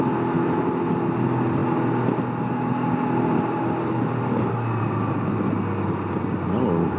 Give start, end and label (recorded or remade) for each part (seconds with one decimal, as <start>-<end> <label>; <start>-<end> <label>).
0.0-7.0 recorded